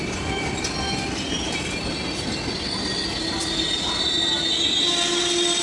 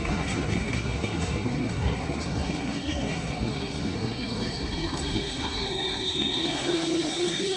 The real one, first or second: first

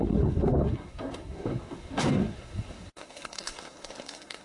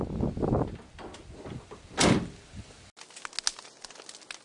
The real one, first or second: second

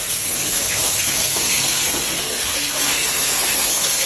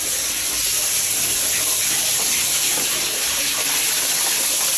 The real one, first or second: second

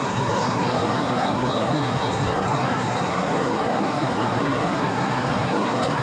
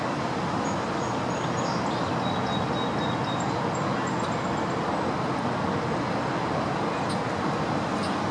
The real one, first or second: second